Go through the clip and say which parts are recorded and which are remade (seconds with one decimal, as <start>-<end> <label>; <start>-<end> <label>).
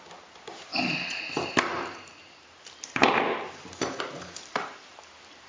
0.0-5.5 remade